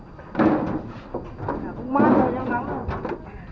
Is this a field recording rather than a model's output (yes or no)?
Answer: yes